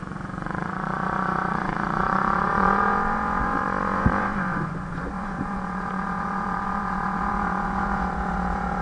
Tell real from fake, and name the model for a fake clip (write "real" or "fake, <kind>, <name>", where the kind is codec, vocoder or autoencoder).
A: fake, vocoder, Vocos